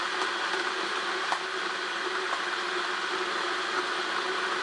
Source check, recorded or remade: recorded